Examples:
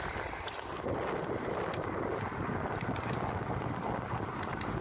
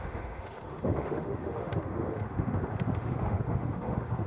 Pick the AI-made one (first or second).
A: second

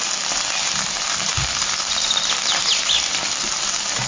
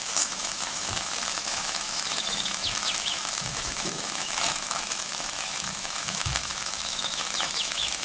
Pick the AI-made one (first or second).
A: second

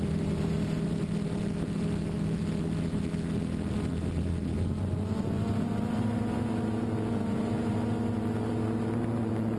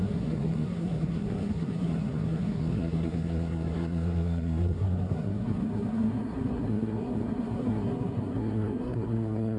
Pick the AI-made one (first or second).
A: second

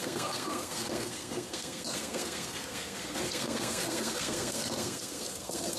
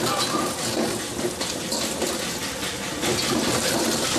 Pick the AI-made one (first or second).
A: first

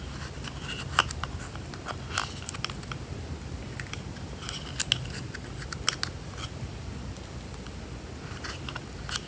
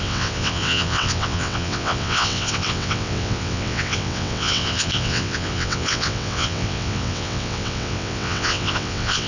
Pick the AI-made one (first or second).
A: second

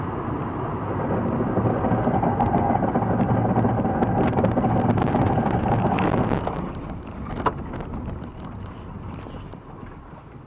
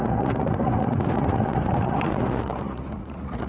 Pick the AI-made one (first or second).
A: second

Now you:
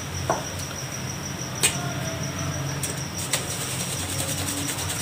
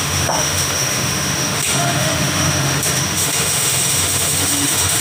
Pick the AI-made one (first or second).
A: second